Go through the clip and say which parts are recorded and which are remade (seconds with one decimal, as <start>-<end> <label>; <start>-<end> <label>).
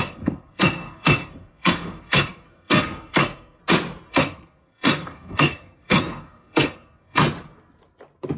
0.0-3.6 remade; 3.6-4.1 recorded; 4.1-7.2 remade; 7.2-8.4 recorded